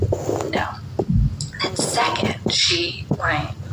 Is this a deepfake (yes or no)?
no